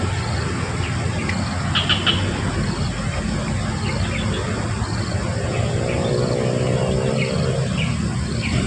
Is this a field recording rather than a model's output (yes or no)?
yes